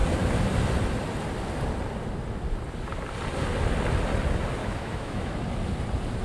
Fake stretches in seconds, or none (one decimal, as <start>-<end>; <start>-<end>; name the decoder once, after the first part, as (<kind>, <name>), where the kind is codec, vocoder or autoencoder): 4.6-5.3 (autoencoder, DAC-VAE)